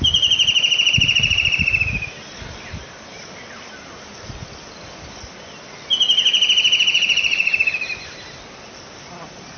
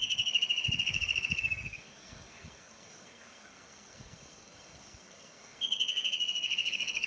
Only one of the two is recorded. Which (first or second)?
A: first